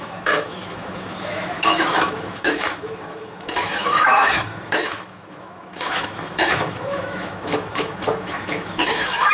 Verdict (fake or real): fake